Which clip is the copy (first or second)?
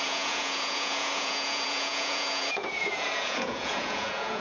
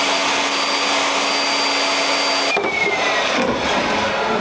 first